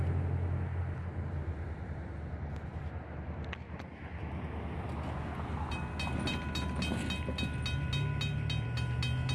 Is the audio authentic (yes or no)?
yes